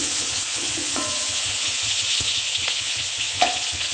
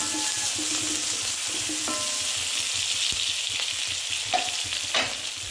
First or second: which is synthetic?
first